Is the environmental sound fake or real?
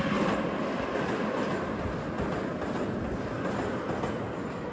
real